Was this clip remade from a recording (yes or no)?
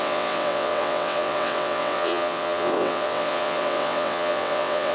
yes